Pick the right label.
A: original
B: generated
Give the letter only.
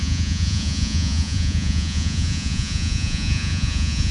B